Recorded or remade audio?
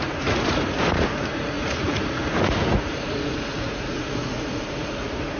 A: remade